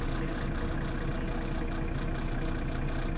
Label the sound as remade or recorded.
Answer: recorded